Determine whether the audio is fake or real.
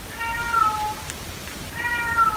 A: real